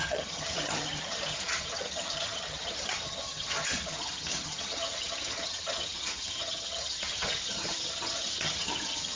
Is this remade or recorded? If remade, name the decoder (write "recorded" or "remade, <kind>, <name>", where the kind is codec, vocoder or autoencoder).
remade, vocoder, HiFi-GAN